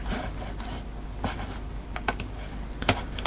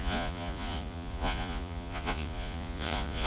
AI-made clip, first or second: second